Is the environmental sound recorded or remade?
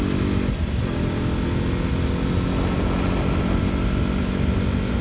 recorded